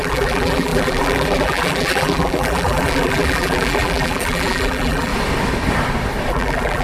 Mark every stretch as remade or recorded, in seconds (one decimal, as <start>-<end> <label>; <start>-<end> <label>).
0.0-5.1 remade; 5.1-6.3 recorded; 6.3-6.8 remade